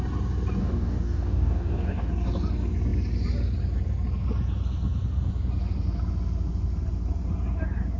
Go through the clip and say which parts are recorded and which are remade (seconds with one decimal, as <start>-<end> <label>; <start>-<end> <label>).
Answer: 0.0-0.6 recorded; 0.6-2.1 remade; 2.1-8.0 recorded